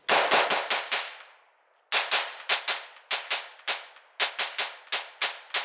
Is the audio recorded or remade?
recorded